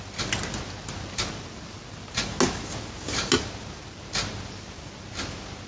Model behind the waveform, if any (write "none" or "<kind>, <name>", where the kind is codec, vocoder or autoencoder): none